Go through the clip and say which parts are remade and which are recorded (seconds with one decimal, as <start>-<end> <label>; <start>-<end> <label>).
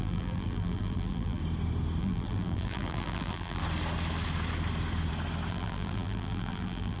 0.0-1.4 remade; 1.4-2.0 recorded; 2.0-3.6 remade; 3.6-5.5 recorded; 5.5-7.0 remade